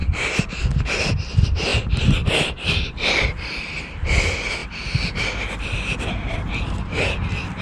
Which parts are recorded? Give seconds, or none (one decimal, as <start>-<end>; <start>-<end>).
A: 0.6-4.6; 5.2-7.6